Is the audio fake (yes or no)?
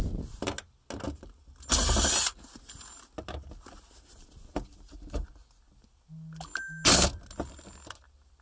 no